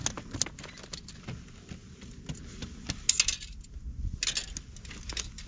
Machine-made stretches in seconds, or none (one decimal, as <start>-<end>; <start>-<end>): none